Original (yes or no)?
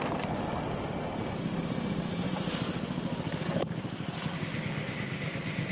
yes